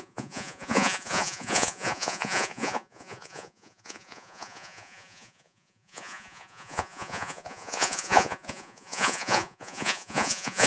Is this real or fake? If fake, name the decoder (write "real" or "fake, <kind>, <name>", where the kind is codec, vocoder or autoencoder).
fake, vocoder, Vocos